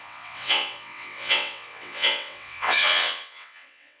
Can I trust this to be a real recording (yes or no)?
no